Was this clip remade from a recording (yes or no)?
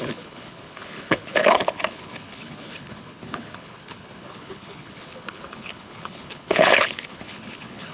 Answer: yes